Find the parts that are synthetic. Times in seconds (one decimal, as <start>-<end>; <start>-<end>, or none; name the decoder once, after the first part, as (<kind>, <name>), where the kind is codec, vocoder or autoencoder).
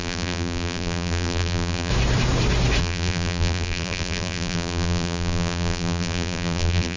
0.0-1.9 (vocoder, BigVGAN v2); 2.8-7.0